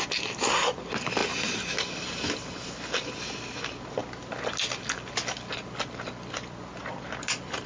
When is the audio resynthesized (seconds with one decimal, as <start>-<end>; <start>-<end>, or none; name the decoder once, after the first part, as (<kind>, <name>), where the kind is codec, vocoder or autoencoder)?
none